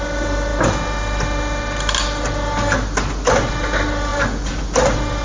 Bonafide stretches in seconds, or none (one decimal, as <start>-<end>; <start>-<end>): 0.0-5.2